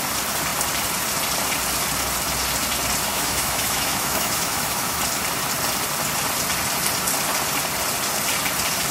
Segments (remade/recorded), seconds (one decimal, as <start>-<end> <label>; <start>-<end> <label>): 0.0-3.1 recorded; 3.1-5.0 remade; 5.0-8.9 recorded